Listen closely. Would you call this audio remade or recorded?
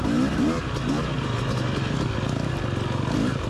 recorded